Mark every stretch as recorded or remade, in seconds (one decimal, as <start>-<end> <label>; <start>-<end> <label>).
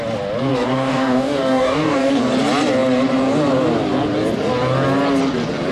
0.0-0.5 recorded; 0.5-2.2 remade; 2.2-5.7 recorded